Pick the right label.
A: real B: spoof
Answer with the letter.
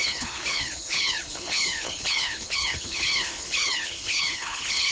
B